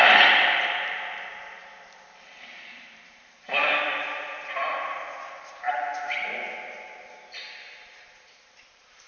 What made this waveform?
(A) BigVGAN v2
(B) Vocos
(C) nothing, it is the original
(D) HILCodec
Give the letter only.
A